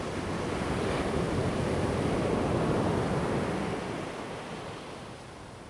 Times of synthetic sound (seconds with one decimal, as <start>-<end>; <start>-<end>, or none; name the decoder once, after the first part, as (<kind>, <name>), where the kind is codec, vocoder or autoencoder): none